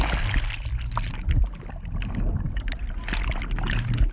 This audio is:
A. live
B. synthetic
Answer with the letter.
A